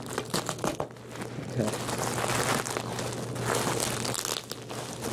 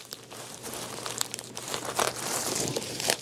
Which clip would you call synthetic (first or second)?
second